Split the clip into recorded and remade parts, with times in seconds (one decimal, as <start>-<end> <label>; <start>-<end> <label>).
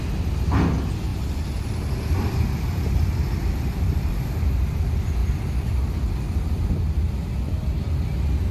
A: 0.0-1.1 recorded; 1.1-4.1 remade; 4.1-8.5 recorded